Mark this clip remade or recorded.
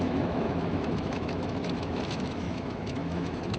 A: remade